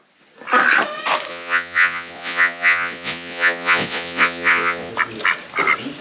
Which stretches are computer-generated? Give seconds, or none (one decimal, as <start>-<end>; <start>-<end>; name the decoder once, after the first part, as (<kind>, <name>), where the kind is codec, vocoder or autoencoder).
1.3-4.9 (vocoder, Vocos)